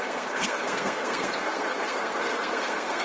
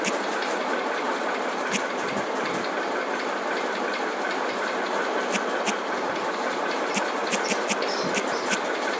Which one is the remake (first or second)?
first